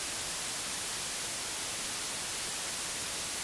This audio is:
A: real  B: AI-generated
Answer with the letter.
A